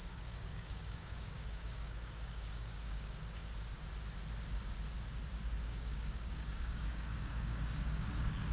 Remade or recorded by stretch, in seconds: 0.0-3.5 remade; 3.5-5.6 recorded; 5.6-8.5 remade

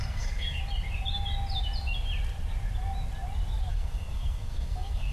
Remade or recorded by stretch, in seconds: 0.0-0.6 remade; 0.6-3.7 recorded; 3.7-5.1 remade

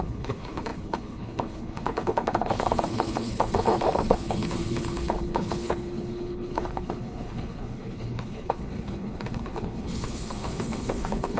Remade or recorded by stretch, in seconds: 0.0-11.4 remade

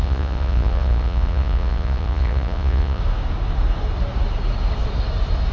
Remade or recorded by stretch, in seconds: 0.0-3.0 remade; 3.0-5.5 recorded

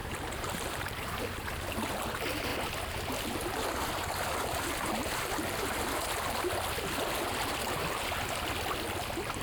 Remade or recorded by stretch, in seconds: 0.0-1.9 remade; 1.9-9.4 recorded